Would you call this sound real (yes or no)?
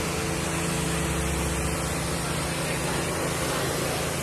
yes